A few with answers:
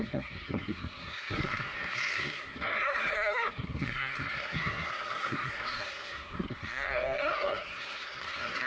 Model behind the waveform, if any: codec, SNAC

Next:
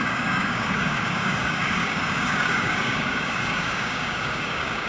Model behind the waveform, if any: codec, DAC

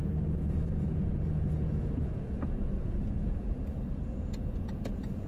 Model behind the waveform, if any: vocoder, Vocos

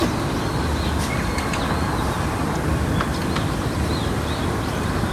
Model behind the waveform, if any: none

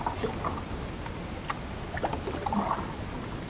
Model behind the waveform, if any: none